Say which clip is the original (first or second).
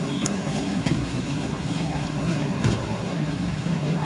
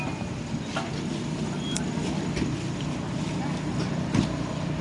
second